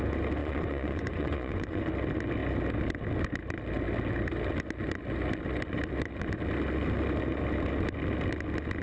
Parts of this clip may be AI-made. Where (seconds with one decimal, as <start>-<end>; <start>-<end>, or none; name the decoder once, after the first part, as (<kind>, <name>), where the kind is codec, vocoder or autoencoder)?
0.4-1.9 (vocoder, Vocos)